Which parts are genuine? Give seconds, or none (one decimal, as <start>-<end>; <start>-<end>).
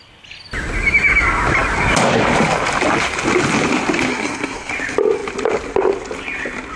0.0-4.1; 4.7-6.8